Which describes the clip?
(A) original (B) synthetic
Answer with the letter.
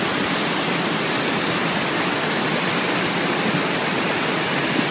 A